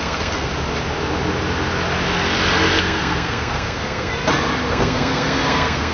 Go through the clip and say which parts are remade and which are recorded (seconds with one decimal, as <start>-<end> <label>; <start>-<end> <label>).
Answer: 0.0-0.5 remade; 0.5-2.8 recorded; 2.8-4.1 remade; 4.1-4.7 recorded; 4.7-5.9 remade

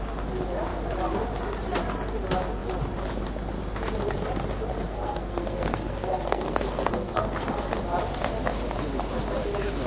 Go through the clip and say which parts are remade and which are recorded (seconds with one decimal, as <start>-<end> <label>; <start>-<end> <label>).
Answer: 0.0-4.7 recorded; 4.7-7.7 remade; 7.7-9.9 recorded

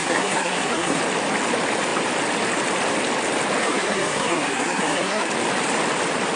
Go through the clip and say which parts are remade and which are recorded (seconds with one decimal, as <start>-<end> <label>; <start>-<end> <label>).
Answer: 0.0-1.0 remade; 1.0-3.6 recorded; 3.6-5.3 remade; 5.3-6.4 recorded

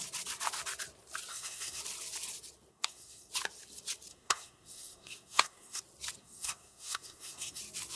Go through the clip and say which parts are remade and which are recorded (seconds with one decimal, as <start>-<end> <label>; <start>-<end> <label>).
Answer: 0.0-1.3 recorded; 1.3-1.8 remade; 1.8-2.7 recorded; 2.7-3.3 remade; 3.3-4.1 recorded; 4.1-5.8 remade; 5.8-6.2 recorded; 6.2-7.6 remade; 7.6-8.0 recorded

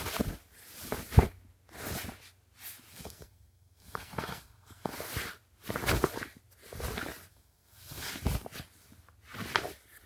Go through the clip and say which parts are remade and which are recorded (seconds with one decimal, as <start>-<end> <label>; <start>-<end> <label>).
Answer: 0.0-2.9 recorded; 2.9-4.9 remade; 4.9-7.3 recorded; 7.3-8.1 remade; 8.1-10.1 recorded

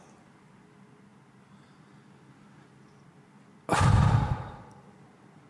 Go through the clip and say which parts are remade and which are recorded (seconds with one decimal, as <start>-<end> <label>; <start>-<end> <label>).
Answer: 0.0-5.5 recorded